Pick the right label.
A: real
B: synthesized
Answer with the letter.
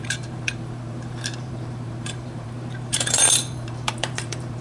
B